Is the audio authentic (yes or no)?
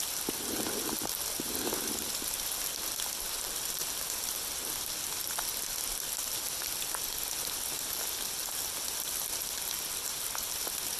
yes